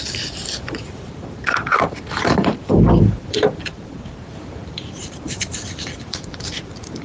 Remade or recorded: remade